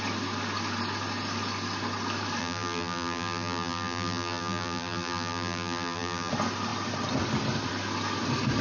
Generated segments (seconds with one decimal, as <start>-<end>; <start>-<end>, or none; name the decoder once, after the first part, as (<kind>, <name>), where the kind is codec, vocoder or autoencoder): 2.4-6.3 (vocoder, BigVGAN v2)